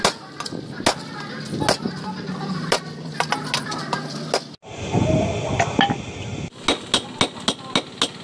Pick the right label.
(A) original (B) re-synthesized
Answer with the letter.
A